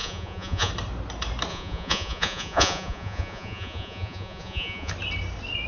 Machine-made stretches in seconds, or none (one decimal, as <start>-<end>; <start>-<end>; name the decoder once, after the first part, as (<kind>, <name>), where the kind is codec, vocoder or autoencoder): 0.0-0.7 (vocoder, Vocos); 1.5-4.9

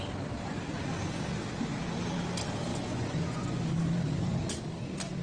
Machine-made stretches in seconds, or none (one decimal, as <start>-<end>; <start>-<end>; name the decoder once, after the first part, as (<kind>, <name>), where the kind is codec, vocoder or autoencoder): 2.7-3.6 (vocoder, Vocos)

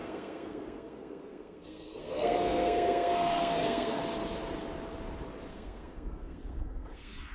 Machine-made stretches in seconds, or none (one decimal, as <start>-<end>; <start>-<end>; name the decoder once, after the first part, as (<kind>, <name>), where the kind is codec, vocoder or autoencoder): 0.0-4.0 (codec, SNAC); 5.5-7.3

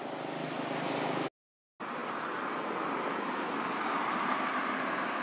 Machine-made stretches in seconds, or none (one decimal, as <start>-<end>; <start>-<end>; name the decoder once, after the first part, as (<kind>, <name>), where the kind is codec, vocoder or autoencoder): none